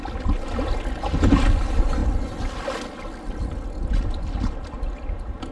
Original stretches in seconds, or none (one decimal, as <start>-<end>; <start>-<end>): 0.0-5.5